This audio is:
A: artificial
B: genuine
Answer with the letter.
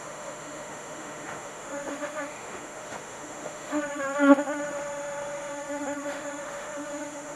A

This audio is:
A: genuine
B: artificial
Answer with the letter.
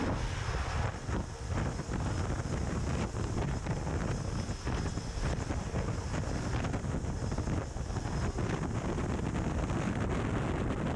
A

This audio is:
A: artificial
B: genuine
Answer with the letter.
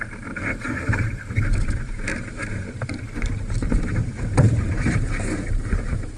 A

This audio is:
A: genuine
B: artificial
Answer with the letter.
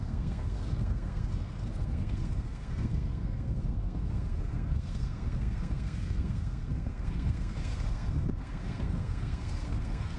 B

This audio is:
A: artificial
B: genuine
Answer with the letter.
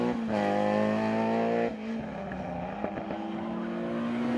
B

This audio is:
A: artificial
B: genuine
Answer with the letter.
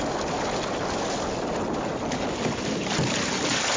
B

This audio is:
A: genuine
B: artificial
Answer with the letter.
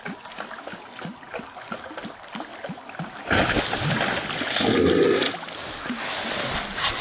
A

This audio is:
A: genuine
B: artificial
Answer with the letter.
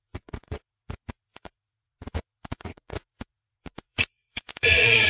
B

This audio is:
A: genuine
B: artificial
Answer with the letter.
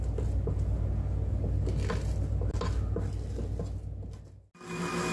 A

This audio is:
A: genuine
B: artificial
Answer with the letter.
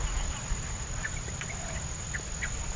A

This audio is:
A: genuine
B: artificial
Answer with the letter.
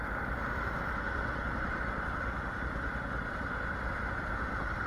A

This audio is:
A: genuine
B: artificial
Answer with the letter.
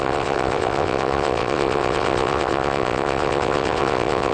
B